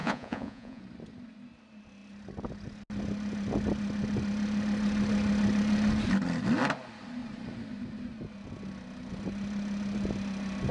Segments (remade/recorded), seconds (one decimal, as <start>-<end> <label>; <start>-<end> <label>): 0.0-0.8 remade; 0.8-10.7 recorded